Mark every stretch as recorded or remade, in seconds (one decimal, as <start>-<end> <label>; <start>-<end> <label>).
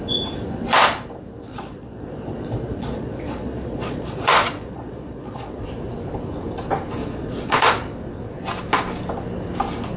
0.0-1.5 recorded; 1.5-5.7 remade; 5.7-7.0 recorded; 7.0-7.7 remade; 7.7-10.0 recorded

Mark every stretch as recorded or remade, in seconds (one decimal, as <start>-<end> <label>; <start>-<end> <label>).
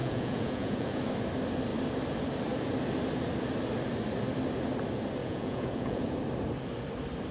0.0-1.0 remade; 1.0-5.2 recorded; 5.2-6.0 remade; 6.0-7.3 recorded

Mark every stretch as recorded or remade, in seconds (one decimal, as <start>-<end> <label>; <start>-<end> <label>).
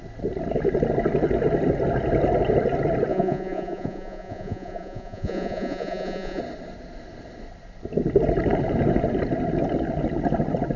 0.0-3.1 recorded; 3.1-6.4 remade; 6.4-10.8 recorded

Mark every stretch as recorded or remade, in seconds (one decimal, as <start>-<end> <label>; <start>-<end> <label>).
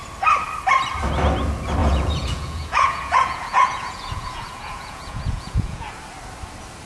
0.0-1.8 recorded; 1.8-5.9 remade; 5.9-6.9 recorded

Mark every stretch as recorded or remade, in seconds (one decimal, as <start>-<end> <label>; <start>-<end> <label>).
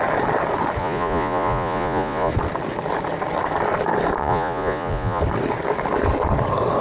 0.0-0.8 recorded; 0.8-2.3 remade; 2.3-4.2 recorded; 4.2-5.2 remade; 5.2-6.8 recorded